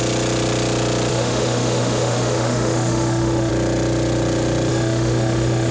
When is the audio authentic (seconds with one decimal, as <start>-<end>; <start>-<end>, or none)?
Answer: 0.0-1.1; 3.5-4.7